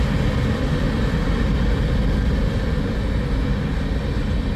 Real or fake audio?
real